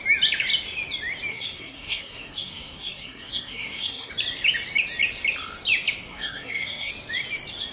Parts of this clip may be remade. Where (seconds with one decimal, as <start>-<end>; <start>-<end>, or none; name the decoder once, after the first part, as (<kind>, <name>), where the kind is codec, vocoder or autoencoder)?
1.3-4.1 (codec, SNAC); 6.1-6.9